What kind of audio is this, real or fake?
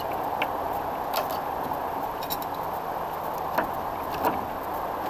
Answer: real